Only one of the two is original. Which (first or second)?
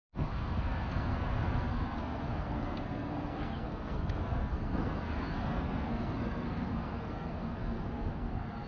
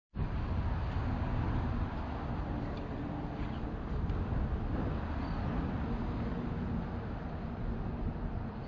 second